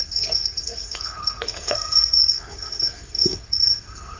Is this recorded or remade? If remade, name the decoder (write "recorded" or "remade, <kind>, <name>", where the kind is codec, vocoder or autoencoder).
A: remade, codec, SNAC